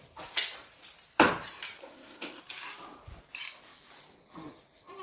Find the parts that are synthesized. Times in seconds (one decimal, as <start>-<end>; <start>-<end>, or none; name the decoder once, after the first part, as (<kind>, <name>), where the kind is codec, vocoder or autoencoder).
1.8-2.4 (codec, SNAC)